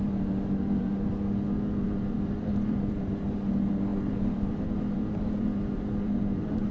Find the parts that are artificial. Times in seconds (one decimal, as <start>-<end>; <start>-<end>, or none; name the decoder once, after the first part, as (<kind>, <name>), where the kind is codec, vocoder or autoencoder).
0.0-1.1 (vocoder, BigVGAN v2); 1.8-6.7